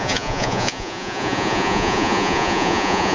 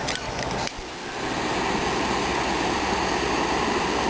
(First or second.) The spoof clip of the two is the first